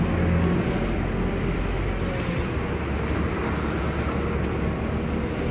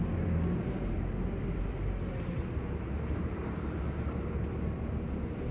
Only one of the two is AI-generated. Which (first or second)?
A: second